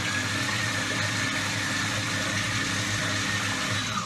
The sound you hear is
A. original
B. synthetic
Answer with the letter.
A